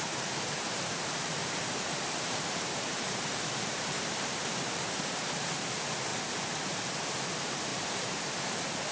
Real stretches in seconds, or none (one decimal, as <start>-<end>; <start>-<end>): 6.1-6.6